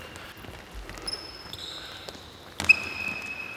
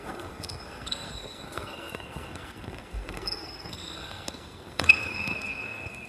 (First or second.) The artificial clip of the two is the second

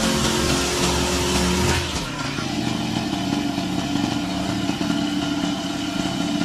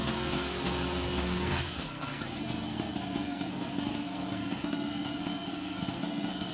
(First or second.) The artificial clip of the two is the second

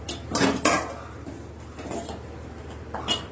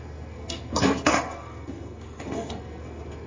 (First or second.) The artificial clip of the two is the second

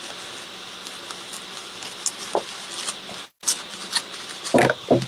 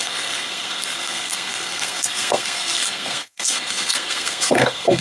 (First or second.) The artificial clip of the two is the second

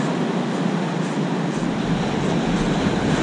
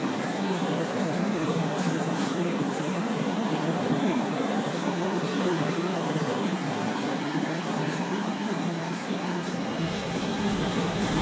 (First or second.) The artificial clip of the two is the second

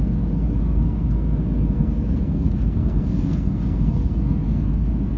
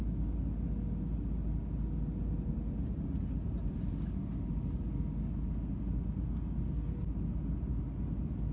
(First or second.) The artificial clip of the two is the first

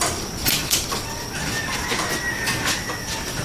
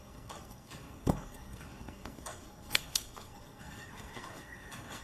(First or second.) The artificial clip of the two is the second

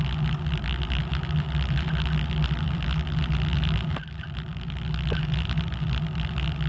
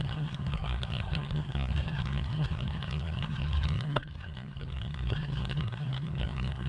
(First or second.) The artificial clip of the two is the second